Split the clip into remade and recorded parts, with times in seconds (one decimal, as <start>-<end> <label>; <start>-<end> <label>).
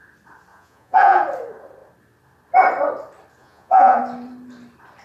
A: 0.0-0.5 recorded; 0.5-1.2 remade; 1.2-3.4 recorded; 3.4-4.0 remade; 4.0-5.0 recorded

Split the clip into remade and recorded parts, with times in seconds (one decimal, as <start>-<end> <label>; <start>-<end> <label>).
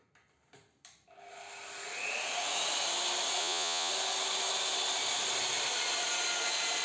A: 0.0-3.4 recorded; 3.4-3.9 remade; 3.9-6.8 recorded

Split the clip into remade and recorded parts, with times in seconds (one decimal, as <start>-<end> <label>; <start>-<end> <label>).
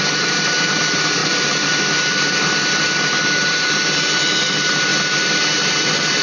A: 0.0-6.2 recorded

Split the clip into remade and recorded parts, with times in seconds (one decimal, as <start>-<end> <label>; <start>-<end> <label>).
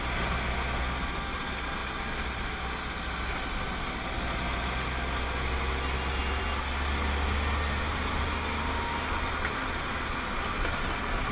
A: 0.0-11.3 recorded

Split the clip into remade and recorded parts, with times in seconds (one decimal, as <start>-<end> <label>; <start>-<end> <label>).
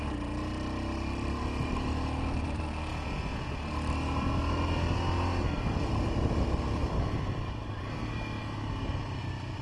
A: 0.0-2.9 recorded; 2.9-3.5 remade; 3.5-9.6 recorded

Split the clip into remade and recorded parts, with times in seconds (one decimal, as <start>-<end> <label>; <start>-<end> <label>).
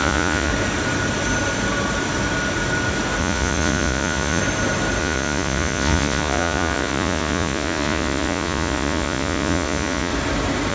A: 0.0-0.5 remade; 0.5-3.2 recorded; 3.2-4.4 remade; 4.4-5.0 recorded; 5.0-10.1 remade; 10.1-10.7 recorded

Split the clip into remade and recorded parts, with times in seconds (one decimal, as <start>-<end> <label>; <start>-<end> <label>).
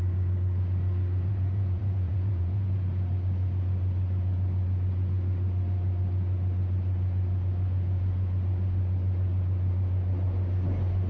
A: 0.0-1.3 recorded; 1.3-2.8 remade; 2.8-11.1 recorded